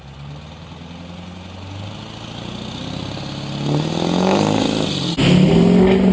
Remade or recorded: recorded